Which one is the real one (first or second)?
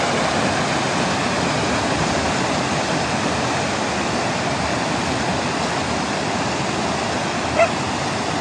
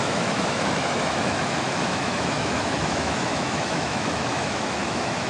first